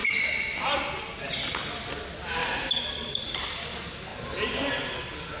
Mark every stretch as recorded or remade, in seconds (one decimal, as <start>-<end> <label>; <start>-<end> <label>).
0.0-0.9 remade; 0.9-5.4 recorded